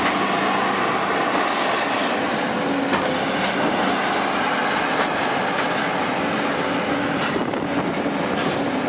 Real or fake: real